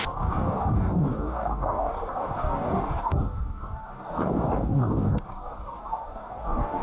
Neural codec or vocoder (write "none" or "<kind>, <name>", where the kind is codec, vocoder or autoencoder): codec, DAC